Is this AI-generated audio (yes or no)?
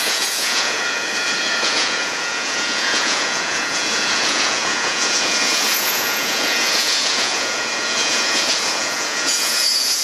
yes